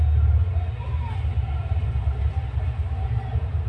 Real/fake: real